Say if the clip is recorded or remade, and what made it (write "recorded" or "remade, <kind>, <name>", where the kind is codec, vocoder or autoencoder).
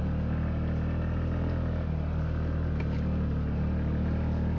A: recorded